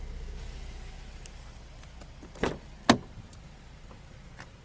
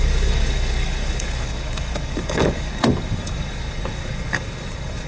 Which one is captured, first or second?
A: first